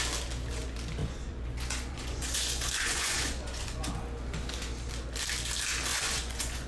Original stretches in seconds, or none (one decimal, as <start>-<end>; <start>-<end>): 0.0-1.0; 3.9-5.9